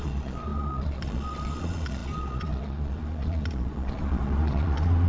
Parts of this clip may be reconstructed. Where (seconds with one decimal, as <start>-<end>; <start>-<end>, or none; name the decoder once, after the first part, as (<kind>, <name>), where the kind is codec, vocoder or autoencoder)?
0.0-5.1 (vocoder, Vocos)